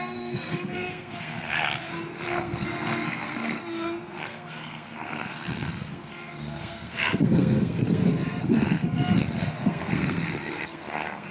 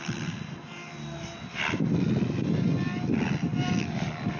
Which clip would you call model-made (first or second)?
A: first